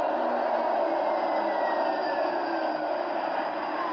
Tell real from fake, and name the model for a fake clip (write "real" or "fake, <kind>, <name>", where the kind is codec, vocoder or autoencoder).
real